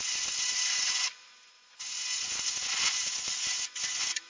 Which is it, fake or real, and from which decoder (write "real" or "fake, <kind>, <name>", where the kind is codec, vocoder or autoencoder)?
fake, vocoder, Vocos